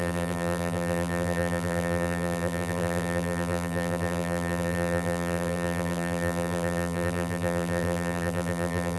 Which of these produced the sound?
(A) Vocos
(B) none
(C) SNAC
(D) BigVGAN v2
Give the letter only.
D